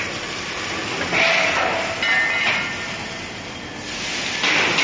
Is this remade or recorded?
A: recorded